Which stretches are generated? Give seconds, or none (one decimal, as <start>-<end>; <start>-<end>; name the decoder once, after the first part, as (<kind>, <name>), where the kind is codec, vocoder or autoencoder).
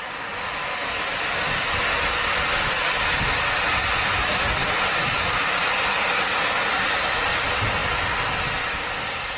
none